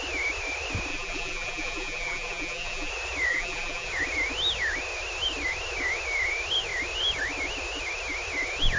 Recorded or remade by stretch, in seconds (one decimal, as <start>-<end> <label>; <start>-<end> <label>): 0.0-0.9 recorded; 0.9-2.9 remade; 2.9-3.3 recorded; 3.3-3.9 remade; 3.9-8.8 recorded